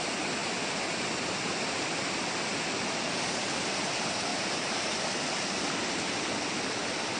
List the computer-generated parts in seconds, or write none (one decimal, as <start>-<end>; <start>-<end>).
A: none